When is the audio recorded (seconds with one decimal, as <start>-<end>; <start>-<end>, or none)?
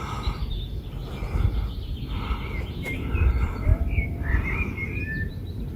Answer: 1.0-2.6; 3.7-4.3